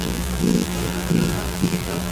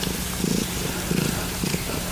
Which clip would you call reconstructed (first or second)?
first